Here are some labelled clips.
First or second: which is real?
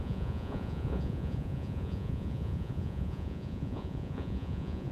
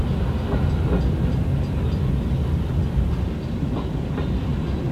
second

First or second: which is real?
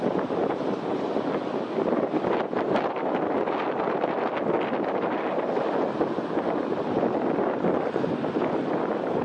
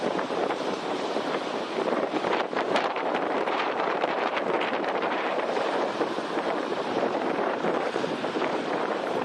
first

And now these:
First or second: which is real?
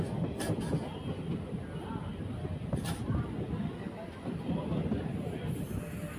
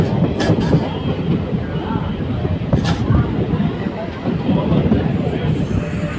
first